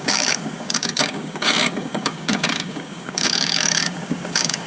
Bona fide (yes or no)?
no